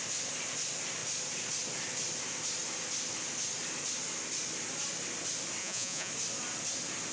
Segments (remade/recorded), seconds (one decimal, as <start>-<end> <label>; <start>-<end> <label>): 0.0-5.6 recorded; 5.6-6.1 remade; 6.1-7.1 recorded